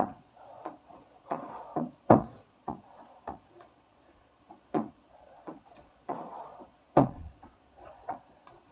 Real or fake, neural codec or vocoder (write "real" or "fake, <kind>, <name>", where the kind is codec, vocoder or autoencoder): fake, vocoder, Vocos